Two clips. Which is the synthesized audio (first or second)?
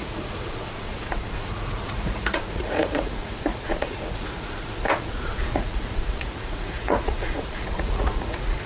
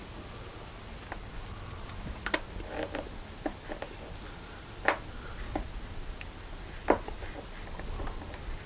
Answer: first